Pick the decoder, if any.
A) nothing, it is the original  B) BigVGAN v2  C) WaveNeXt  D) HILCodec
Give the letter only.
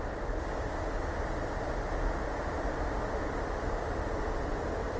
A